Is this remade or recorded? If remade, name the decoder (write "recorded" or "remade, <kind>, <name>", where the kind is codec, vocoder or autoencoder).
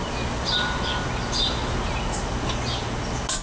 recorded